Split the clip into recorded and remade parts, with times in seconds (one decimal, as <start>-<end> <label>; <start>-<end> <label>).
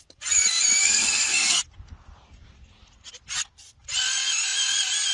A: 0.0-0.8 recorded; 0.8-1.6 remade; 1.6-5.1 recorded